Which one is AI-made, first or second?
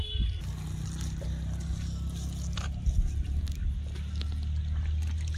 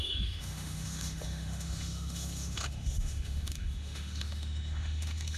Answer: second